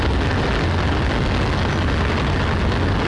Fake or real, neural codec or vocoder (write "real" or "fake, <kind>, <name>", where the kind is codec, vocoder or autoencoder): real